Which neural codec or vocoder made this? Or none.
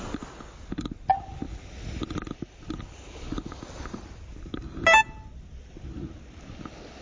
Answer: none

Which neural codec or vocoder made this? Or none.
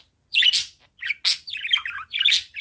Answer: none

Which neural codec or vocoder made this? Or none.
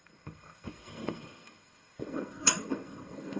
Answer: codec, SNAC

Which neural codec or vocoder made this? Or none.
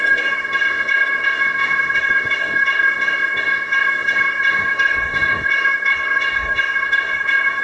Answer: codec, SNAC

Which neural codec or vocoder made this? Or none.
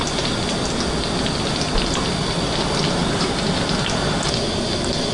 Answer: none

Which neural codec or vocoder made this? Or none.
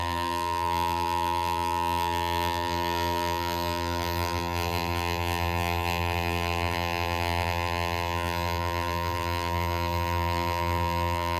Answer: vocoder, BigVGAN v2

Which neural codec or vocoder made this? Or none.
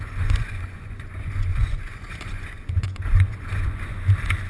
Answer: vocoder, Vocos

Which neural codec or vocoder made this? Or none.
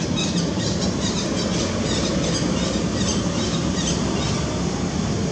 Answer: none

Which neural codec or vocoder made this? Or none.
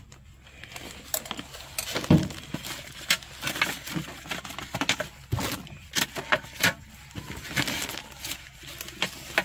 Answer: none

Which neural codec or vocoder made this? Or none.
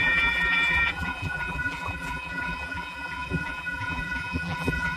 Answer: vocoder, BigVGAN v2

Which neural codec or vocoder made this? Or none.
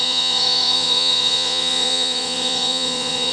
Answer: vocoder, Vocos